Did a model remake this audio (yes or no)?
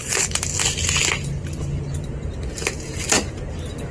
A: no